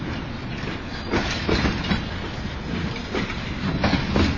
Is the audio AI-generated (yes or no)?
no